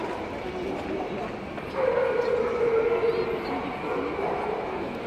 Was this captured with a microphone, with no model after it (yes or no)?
yes